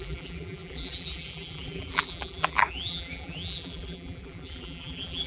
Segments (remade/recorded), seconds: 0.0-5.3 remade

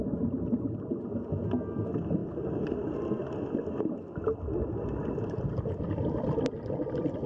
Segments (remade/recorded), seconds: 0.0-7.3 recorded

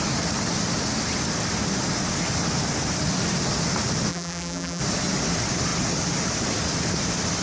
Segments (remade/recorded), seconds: 0.0-4.1 recorded; 4.1-4.8 remade; 4.8-7.4 recorded